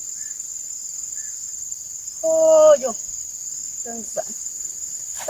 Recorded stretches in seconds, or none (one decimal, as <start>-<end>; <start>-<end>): 0.0-3.2; 3.8-5.3